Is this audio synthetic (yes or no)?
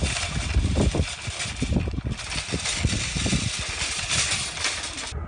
no